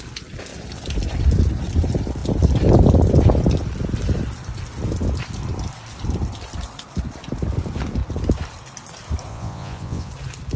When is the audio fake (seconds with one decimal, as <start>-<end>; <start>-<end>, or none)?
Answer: 9.3-10.1